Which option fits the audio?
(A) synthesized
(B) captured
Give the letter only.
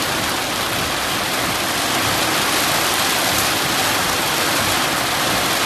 B